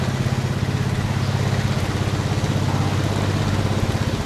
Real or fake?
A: real